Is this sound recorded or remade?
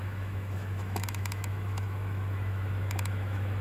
remade